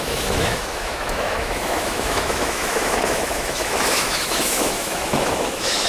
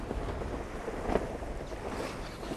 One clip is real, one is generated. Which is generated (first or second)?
first